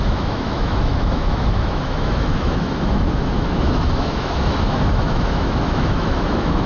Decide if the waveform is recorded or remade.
remade